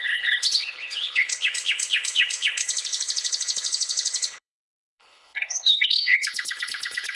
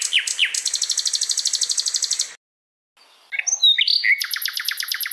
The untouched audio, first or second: second